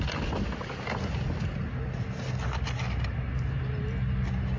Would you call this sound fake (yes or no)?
no